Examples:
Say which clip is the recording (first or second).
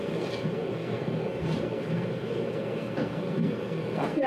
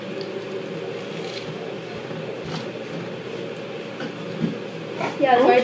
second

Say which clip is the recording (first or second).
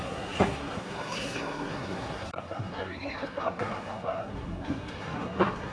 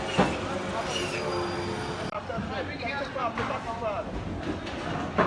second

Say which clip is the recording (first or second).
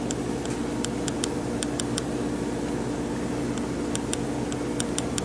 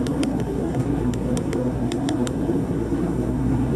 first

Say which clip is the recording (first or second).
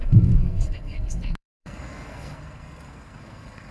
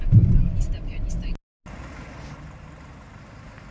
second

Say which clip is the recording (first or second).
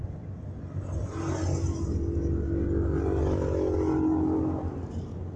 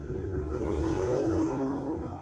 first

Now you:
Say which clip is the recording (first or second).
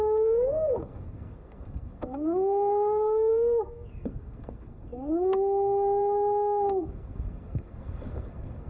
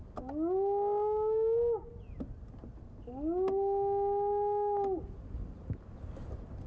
second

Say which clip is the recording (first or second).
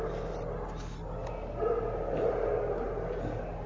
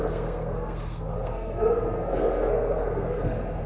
first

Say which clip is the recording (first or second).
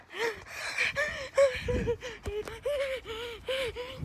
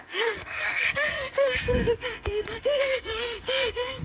first